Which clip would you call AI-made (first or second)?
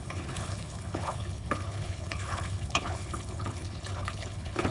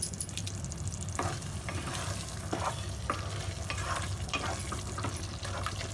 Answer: first